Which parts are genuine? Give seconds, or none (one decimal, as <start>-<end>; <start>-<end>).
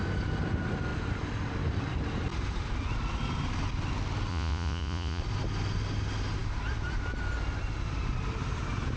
0.0-4.3; 5.2-9.0